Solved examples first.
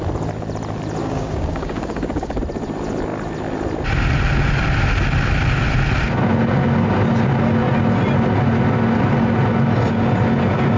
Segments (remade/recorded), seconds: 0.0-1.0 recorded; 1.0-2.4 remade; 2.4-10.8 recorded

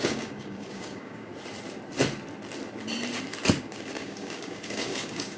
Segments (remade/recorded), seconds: 0.0-1.3 remade; 1.3-3.5 recorded; 3.5-5.4 remade

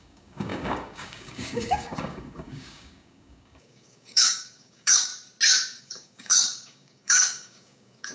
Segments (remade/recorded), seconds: 0.0-5.1 remade; 5.1-5.8 recorded; 5.8-8.1 remade

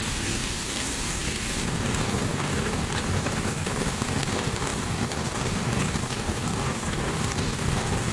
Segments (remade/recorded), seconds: 0.0-8.1 remade

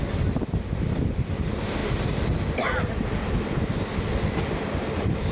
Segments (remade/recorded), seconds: 0.0-5.3 recorded

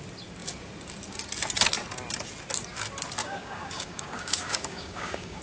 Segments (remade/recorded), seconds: 0.0-3.2 recorded; 3.2-5.4 remade